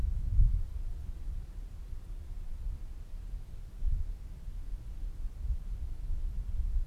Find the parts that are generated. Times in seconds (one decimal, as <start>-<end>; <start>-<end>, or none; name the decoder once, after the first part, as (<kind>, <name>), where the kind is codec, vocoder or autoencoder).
0.0-0.5 (autoencoder, DAC-VAE)